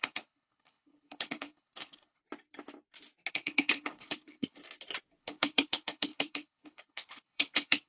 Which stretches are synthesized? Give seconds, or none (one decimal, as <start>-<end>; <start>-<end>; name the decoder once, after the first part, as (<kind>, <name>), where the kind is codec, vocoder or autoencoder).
0.0-2.2 (codec, HILCodec); 3.3-4.6; 5.2-7.9